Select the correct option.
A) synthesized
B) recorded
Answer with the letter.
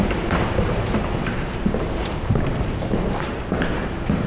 A